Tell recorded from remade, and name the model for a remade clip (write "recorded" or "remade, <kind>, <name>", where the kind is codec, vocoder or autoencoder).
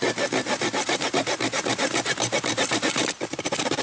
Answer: recorded